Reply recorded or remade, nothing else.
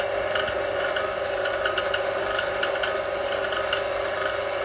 recorded